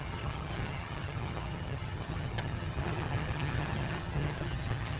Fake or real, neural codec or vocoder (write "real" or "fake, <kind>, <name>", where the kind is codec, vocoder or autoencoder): fake, vocoder, HiFi-GAN